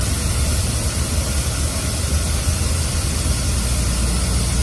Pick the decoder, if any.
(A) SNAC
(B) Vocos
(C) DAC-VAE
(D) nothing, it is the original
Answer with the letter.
D